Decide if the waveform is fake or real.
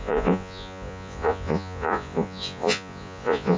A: fake